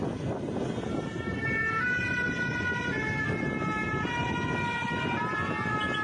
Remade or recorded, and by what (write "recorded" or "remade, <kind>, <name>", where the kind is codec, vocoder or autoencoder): recorded